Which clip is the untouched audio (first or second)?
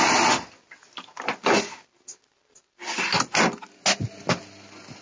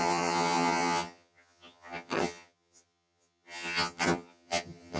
first